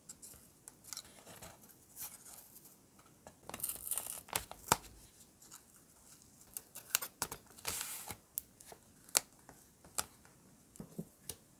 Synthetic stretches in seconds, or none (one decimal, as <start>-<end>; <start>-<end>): none